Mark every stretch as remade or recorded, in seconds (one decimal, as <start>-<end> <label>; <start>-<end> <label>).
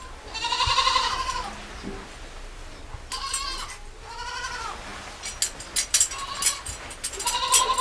0.0-7.8 recorded